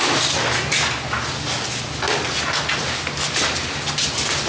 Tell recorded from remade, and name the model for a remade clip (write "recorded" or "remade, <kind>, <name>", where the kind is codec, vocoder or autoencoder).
recorded